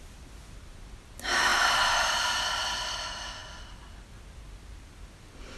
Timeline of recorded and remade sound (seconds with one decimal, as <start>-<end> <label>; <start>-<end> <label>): 0.0-5.6 recorded